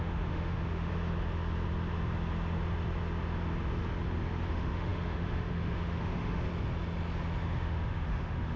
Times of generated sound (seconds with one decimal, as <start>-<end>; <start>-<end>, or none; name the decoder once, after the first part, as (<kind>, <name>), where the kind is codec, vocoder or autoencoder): 0.0-0.9 (autoencoder, DAC-VAE); 4.5-6.5; 7.4-8.6